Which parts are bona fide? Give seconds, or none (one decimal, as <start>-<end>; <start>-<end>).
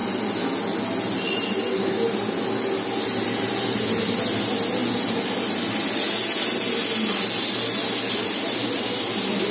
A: 0.0-9.5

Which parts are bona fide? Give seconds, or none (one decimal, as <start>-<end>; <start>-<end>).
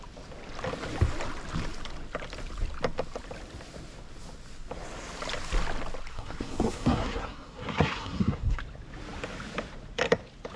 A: 0.0-6.1; 8.6-10.6